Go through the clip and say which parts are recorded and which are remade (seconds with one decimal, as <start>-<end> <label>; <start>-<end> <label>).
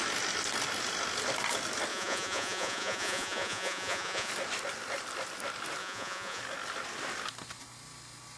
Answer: 0.0-1.9 recorded; 1.9-4.3 remade; 4.3-5.8 recorded; 5.8-6.4 remade; 6.4-8.4 recorded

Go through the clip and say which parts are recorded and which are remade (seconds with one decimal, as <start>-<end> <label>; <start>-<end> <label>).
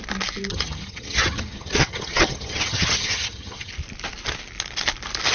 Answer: 0.0-0.5 recorded; 0.5-3.7 remade; 3.7-5.3 recorded